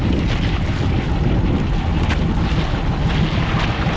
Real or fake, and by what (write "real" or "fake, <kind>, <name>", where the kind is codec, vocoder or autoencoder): real